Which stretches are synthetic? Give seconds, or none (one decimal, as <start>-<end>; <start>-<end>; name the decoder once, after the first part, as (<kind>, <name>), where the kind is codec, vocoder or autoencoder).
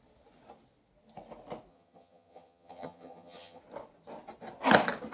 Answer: 1.7-3.6 (vocoder, HiFi-GAN)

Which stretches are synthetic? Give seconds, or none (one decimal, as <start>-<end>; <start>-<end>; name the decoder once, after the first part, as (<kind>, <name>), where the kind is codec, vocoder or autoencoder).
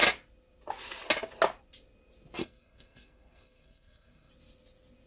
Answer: 2.4-4.3 (codec, SNAC)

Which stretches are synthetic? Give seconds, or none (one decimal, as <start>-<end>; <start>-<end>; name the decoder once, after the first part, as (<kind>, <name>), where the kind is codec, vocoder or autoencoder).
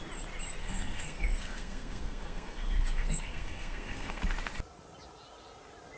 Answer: 0.6-4.2 (codec, SNAC)